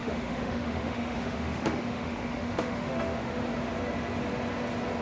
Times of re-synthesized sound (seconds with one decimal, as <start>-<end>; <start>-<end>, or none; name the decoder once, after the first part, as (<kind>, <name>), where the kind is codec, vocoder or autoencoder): 0.0-3.4 (autoencoder, DAC-VAE)